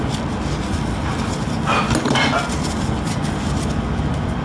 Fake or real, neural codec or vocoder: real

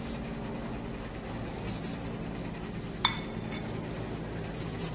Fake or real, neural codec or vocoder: real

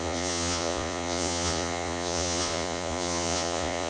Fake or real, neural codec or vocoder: fake, vocoder, Vocos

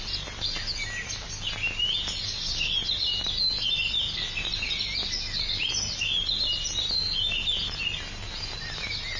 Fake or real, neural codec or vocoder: real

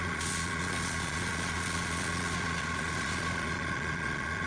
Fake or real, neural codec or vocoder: fake, vocoder, Vocos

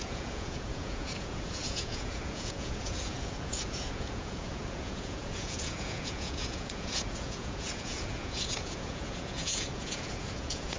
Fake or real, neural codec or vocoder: fake, vocoder, Vocos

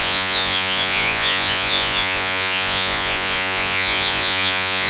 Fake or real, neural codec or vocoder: fake, vocoder, Vocos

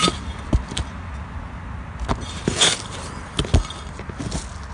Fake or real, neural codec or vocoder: real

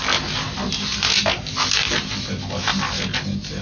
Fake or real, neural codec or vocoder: real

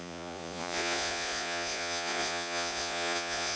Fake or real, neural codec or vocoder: fake, vocoder, Vocos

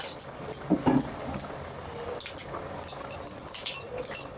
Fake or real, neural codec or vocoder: real